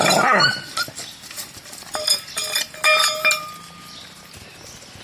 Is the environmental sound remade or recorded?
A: recorded